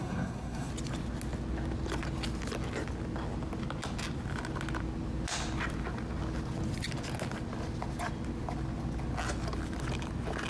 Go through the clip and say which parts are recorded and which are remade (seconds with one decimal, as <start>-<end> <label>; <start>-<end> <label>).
0.0-0.7 remade; 0.7-10.5 recorded